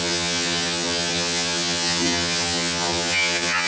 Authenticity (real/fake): fake